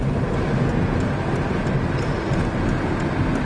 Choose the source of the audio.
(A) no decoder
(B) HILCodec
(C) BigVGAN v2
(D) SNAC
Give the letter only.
A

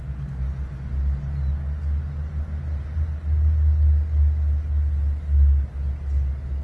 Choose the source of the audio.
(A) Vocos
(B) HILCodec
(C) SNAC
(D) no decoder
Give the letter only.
D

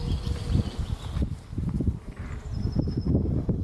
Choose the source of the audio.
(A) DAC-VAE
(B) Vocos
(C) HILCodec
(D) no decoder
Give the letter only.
D